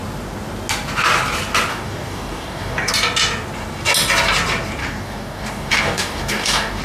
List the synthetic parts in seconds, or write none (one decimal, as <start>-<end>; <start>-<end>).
1.7-2.9; 4.8-6.8